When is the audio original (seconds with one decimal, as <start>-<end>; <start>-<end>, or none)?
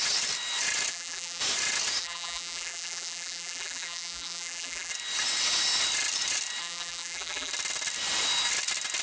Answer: 0.0-0.9; 1.4-2.0; 4.9-6.6; 7.5-9.0